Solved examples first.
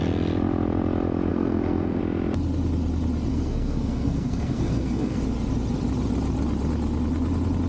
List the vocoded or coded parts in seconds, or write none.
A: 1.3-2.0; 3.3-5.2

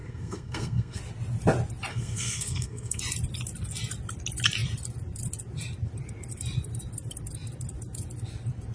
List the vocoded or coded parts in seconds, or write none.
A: 0.0-1.0; 1.9-3.0